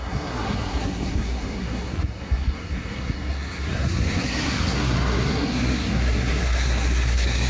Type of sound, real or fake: fake